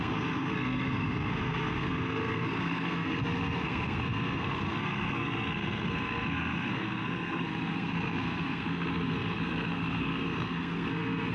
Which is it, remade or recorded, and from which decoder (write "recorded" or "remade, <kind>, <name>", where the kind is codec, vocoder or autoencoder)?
remade, codec, SNAC